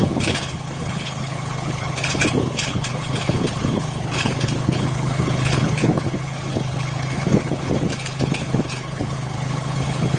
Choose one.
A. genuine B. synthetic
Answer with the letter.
B